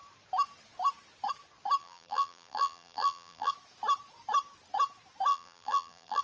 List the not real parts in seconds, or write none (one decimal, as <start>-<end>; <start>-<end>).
1.8-3.5; 5.3-6.2